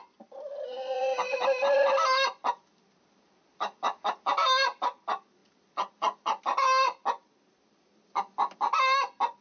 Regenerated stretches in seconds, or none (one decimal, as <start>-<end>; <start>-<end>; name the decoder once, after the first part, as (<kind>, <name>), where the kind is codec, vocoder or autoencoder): 0.0-2.8 (vocoder, BigVGAN v2); 5.4-6.4